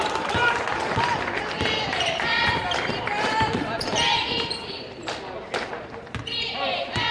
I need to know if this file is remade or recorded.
remade